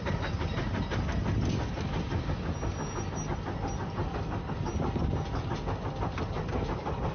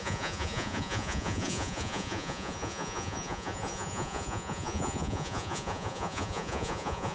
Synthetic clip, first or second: second